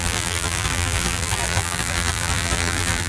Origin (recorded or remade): remade